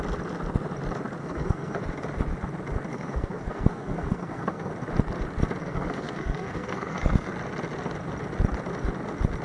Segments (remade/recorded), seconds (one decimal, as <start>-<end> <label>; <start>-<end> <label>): 0.0-1.2 recorded; 1.2-1.8 remade; 1.8-2.9 recorded; 2.9-4.7 remade; 4.7-5.6 recorded; 5.6-7.3 remade; 7.3-9.4 recorded